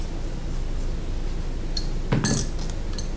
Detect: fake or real real